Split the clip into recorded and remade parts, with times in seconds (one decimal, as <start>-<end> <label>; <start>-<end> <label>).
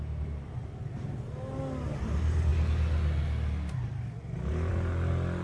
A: 0.0-5.4 recorded